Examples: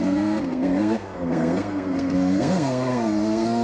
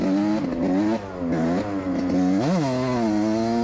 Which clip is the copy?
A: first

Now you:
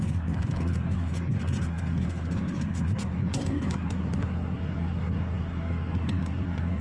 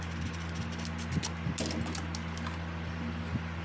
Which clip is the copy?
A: first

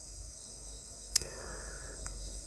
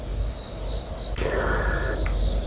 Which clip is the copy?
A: first